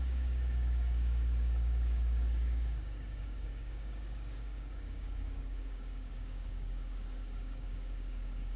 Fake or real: fake